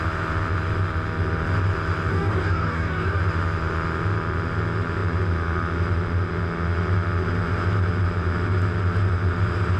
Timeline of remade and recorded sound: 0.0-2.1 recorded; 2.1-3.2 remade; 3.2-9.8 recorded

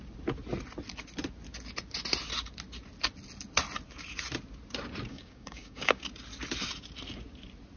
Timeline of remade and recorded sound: 0.0-5.1 recorded; 5.1-6.0 remade; 6.0-7.8 recorded

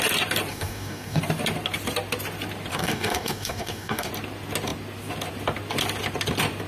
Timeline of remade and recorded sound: 0.0-0.5 recorded; 0.5-1.2 remade; 1.2-2.7 recorded; 2.7-4.1 remade; 4.1-6.7 recorded

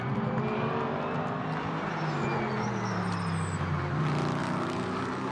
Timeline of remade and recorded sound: 0.0-4.4 recorded; 4.4-5.3 remade